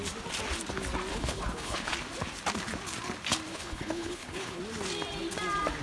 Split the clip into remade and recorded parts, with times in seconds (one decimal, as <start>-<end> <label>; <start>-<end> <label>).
0.0-1.1 recorded; 1.1-1.9 remade; 1.9-3.5 recorded; 3.5-4.6 remade; 4.6-5.8 recorded